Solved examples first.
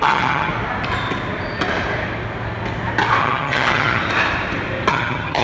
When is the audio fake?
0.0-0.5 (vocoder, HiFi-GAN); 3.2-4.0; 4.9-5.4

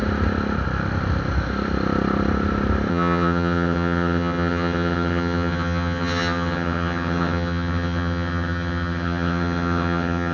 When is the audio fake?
2.9-10.3 (vocoder, HiFi-GAN)

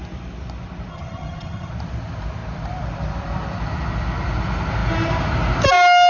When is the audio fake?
0.9-1.7 (vocoder, HiFi-GAN)

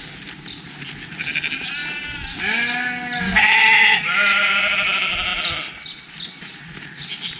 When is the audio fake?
none

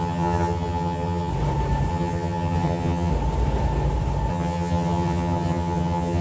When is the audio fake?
0.0-1.3 (vocoder, HiFi-GAN); 1.9-3.1; 4.3-6.2

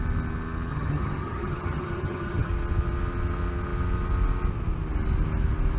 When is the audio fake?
0.7-2.5 (vocoder, HiFi-GAN)

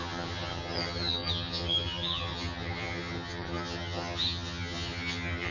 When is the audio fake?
0.0-5.5 (vocoder, HiFi-GAN)